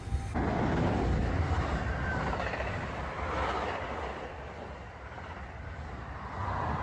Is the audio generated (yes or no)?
no